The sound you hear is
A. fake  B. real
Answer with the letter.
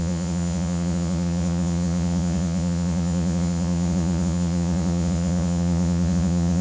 A